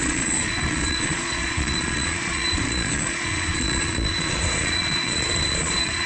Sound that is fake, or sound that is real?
fake